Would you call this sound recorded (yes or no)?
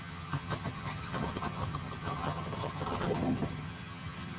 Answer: no